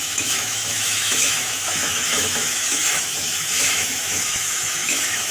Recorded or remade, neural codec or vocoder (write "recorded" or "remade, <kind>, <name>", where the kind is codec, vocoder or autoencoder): remade, autoencoder, DAC-VAE